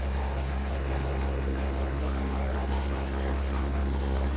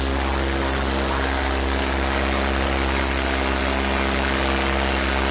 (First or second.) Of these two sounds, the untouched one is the second